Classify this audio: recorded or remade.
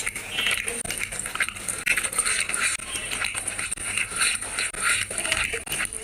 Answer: recorded